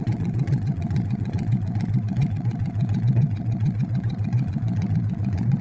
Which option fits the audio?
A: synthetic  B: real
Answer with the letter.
A